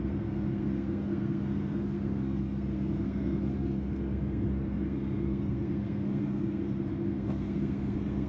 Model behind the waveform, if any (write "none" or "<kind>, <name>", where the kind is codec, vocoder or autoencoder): codec, SNAC